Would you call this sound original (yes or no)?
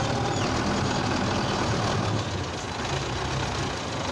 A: yes